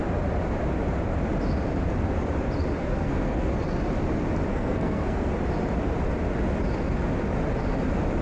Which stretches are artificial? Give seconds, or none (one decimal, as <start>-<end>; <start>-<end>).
2.8-3.5; 4.5-5.3